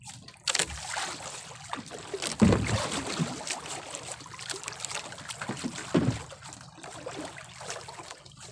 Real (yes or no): yes